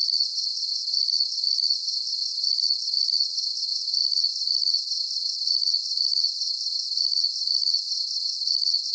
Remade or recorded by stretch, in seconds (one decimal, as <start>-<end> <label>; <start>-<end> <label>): 0.0-8.9 recorded